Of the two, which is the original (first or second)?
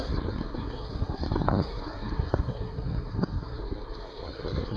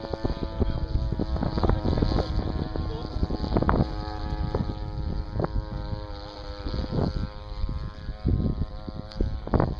second